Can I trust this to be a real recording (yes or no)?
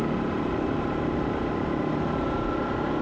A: yes